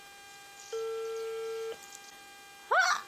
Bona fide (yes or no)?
yes